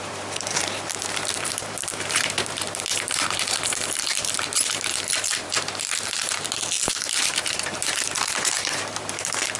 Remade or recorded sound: remade